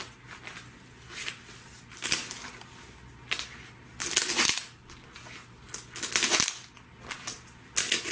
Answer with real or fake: real